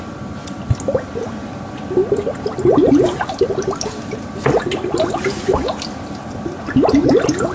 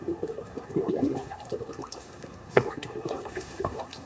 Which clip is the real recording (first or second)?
first